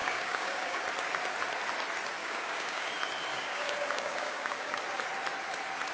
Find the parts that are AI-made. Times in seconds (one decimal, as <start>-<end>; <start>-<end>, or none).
0.0-0.8; 2.2-2.9; 3.3-4.8